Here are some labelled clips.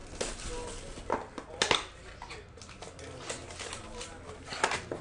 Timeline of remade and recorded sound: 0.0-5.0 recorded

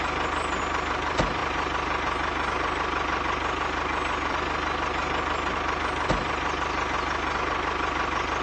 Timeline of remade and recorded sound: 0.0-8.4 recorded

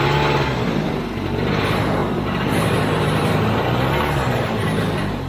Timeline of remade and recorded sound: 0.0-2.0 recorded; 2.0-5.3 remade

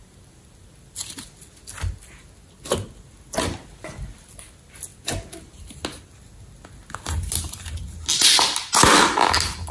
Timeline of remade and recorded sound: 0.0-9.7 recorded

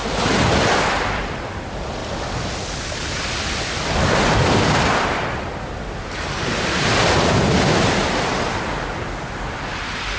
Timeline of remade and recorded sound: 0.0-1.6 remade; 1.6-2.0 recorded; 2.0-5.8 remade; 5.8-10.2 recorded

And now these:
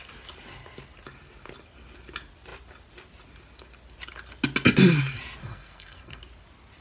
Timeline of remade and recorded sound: 0.0-5.4 recorded; 5.4-6.2 remade; 6.2-6.8 recorded

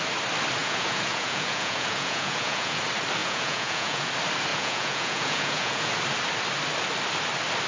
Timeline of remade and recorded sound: 0.0-0.6 recorded; 0.6-2.8 remade; 2.8-3.2 recorded; 3.2-4.1 remade; 4.1-4.5 recorded; 4.5-5.9 remade; 5.9-7.7 recorded

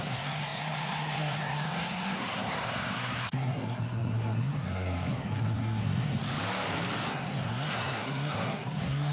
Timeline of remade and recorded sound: 0.0-6.2 remade; 6.2-7.1 recorded; 7.1-9.1 remade